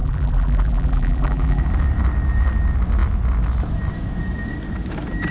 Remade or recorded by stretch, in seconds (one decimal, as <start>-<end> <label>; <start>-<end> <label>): 0.0-1.6 remade; 1.6-5.3 recorded